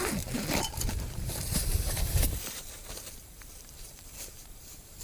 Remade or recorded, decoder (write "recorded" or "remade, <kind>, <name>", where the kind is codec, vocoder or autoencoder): remade, vocoder, BigVGAN v2